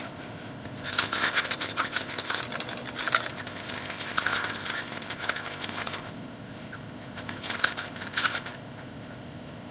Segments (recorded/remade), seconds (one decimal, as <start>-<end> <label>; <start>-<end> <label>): 0.0-2.4 remade; 2.4-3.3 recorded; 3.3-9.7 remade